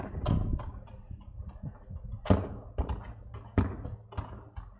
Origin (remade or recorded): recorded